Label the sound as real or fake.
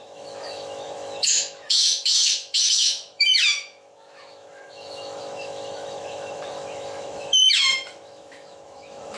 fake